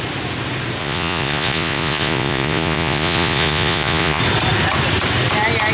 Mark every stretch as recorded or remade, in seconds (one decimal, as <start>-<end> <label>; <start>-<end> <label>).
0.0-0.8 recorded; 0.8-4.2 remade; 4.2-5.7 recorded